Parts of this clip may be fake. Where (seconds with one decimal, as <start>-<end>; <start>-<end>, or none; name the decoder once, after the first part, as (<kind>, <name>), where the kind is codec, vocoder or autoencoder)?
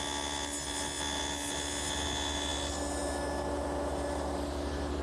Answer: none